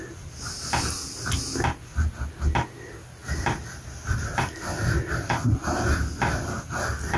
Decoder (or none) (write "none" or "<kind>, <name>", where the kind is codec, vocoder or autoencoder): none